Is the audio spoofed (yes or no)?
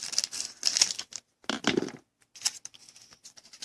no